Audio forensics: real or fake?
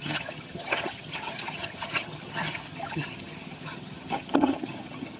fake